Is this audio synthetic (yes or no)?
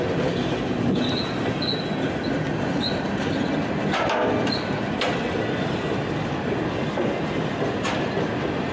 no